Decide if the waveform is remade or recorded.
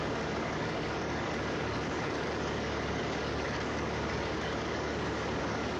remade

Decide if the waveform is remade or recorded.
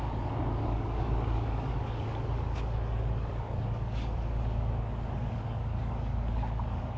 remade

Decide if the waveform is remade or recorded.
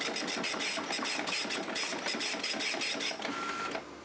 recorded